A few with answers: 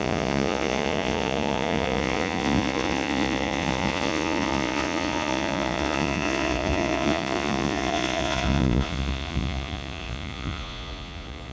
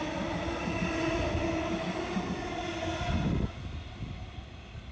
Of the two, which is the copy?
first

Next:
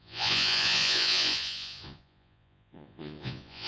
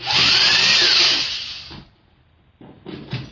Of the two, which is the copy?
first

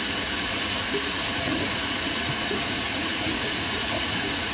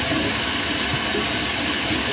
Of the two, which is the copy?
first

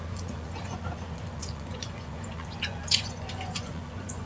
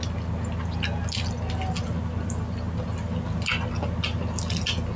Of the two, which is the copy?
first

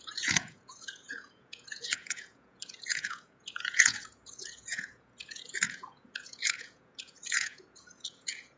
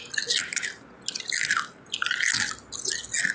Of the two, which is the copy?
first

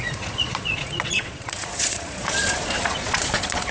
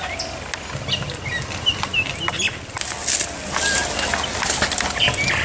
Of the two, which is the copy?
first